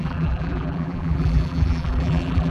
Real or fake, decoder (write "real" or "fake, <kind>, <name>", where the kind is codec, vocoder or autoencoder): fake, vocoder, BigVGAN v2